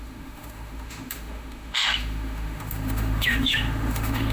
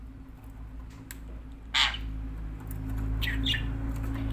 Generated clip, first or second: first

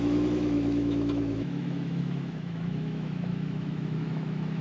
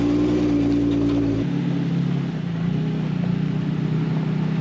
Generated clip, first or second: first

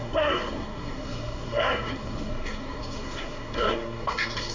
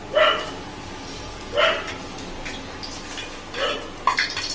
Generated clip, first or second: first